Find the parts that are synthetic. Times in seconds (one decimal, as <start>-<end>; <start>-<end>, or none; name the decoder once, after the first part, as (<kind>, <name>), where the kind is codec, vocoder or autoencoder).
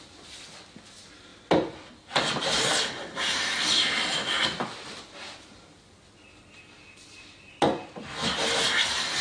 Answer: none